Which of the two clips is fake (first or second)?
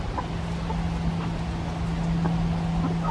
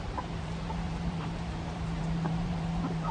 second